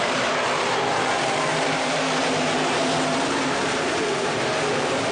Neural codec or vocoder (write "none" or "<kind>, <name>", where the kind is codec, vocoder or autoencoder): vocoder, BigVGAN v2